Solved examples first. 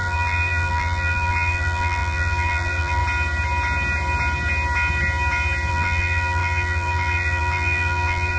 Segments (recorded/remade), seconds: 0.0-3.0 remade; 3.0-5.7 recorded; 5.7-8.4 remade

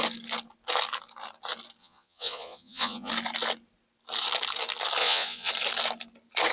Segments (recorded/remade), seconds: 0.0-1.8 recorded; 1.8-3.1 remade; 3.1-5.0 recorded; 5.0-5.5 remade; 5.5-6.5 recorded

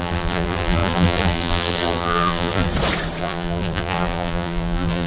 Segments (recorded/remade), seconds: 0.0-2.7 remade; 2.7-3.2 recorded; 3.2-5.1 remade

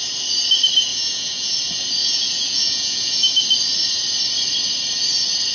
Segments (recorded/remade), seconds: 0.0-0.9 recorded; 0.9-1.6 remade; 1.6-2.0 recorded; 2.0-3.3 remade; 3.3-5.5 recorded